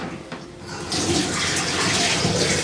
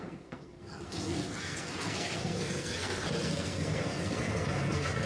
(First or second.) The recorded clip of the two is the first